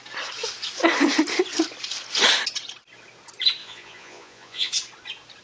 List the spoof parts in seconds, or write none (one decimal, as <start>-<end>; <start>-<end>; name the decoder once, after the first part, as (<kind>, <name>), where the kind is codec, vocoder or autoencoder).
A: 3.6-4.7 (vocoder, Vocos)